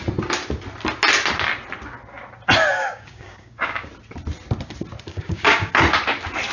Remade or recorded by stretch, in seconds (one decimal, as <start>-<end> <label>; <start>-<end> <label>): 0.0-2.7 recorded; 2.7-3.9 remade; 3.9-5.1 recorded; 5.1-5.7 remade; 5.7-6.5 recorded